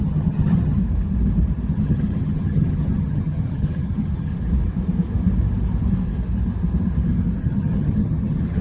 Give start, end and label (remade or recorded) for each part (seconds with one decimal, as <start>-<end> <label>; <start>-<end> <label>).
0.0-0.8 remade; 0.8-1.7 recorded; 1.7-4.3 remade; 4.3-7.4 recorded; 7.4-8.6 remade